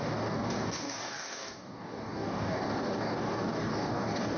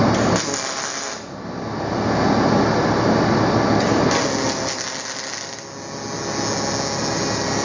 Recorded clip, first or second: second